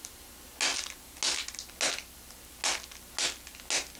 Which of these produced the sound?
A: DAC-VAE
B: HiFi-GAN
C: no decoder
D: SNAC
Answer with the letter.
C